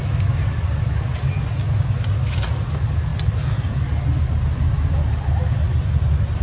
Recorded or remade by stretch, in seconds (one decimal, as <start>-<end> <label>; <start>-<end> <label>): 0.0-6.4 recorded